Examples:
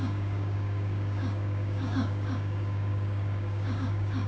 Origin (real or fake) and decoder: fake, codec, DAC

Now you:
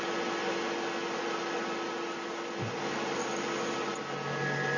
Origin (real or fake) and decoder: real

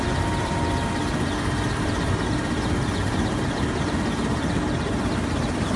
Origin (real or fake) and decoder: fake, vocoder, BigVGAN v2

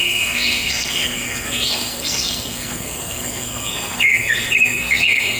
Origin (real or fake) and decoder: fake, codec, SNAC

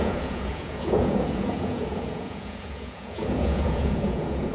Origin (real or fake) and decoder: fake, vocoder, Vocos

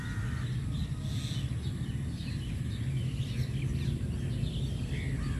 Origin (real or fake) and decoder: real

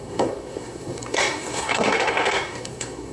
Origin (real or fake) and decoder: fake, codec, SNAC